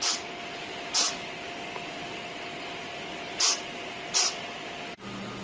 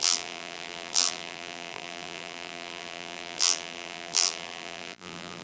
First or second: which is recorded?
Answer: first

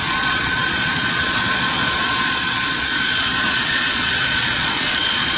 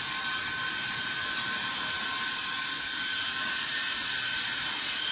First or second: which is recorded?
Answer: second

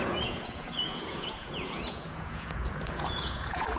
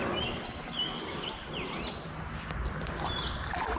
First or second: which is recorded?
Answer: second